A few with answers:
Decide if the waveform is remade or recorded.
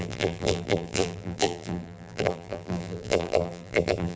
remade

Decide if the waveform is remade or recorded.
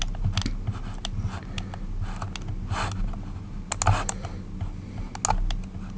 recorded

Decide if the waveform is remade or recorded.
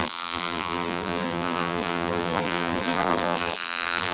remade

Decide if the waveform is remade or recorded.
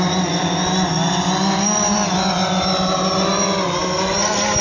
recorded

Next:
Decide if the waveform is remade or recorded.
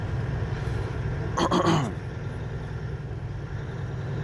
recorded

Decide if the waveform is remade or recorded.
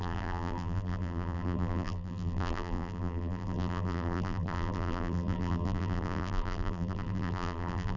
remade